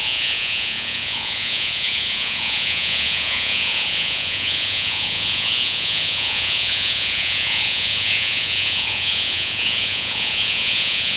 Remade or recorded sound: remade